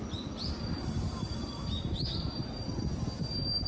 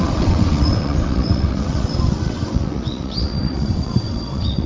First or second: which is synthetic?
second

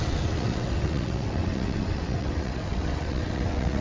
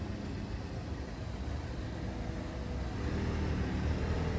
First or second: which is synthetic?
first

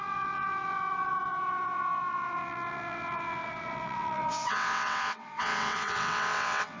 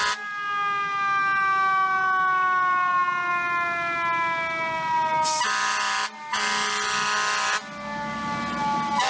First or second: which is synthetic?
first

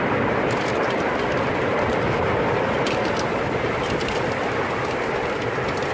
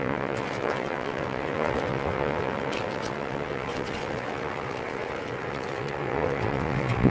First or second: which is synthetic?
second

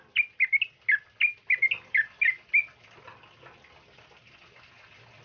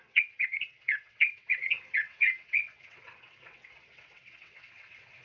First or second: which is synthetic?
second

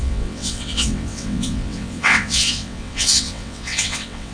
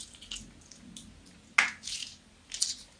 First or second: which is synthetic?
first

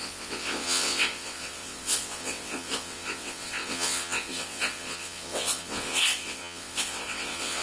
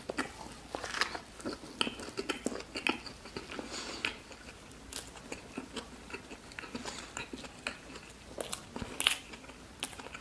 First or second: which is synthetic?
first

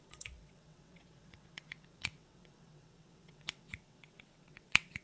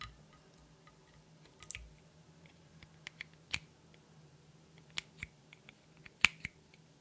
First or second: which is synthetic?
first